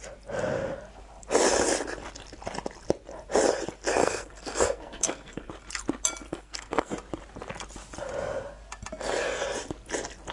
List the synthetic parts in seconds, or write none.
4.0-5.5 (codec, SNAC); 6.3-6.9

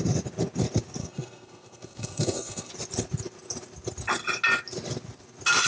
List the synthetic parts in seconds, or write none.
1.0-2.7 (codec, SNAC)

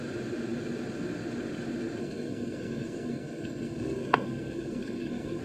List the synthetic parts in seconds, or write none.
2.0-5.4 (codec, SNAC)

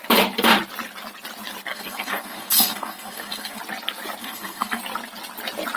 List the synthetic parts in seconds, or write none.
1.7-3.6 (codec, SNAC); 4.2-4.8

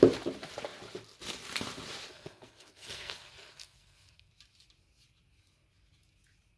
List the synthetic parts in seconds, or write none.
2.1-4.3 (codec, SNAC)

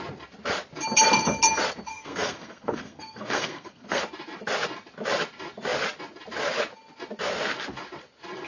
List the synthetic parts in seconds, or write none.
1.9-4.0 (codec, SNAC)

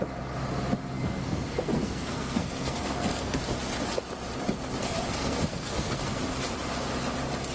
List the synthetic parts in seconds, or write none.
1.2-3.4 (codec, SNAC); 4.8-6.2